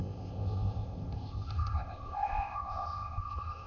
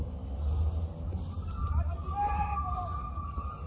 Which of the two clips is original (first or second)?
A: second